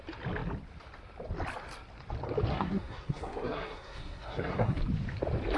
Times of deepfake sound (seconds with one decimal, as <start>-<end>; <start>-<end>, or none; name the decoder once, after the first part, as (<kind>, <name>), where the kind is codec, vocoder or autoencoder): 2.5-4.8 (codec, SNAC)

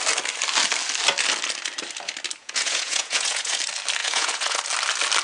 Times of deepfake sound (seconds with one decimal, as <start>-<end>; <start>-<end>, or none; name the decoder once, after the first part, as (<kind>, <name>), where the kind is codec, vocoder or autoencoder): 2.4-3.6 (vocoder, Vocos); 4.0-4.6

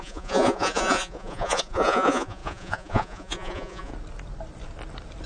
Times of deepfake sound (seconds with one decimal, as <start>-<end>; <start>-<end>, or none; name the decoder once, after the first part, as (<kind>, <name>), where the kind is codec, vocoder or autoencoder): 0.0-3.9 (vocoder, Vocos)

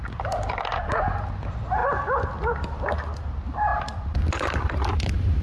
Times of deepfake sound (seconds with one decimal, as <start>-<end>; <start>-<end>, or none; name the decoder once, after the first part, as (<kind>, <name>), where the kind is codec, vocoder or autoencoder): 3.7-4.9 (vocoder, BigVGAN v2)

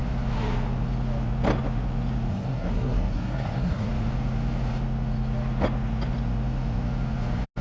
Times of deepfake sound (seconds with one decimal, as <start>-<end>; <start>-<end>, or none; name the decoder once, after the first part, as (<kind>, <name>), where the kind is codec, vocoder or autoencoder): 2.3-3.9 (codec, SNAC)

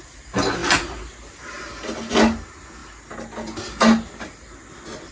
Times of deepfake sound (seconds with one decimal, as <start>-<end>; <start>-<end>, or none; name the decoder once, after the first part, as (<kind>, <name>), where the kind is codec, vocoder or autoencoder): none